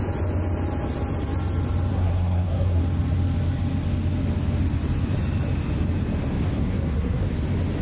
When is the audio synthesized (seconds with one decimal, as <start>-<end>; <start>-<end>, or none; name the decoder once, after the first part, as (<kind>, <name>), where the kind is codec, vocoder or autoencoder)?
1.9-2.8 (codec, SNAC); 6.6-7.2